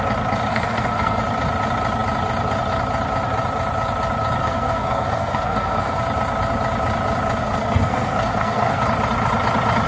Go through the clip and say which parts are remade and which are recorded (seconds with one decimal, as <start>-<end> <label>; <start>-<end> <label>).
0.0-0.5 recorded; 0.5-1.2 remade; 1.2-4.4 recorded; 4.4-6.0 remade; 6.0-7.4 recorded; 7.4-8.8 remade; 8.8-9.9 recorded

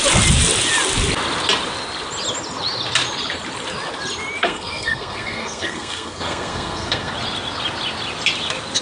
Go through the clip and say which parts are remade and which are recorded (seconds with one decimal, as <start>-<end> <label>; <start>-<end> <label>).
0.0-4.4 recorded; 4.4-7.1 remade; 7.1-8.8 recorded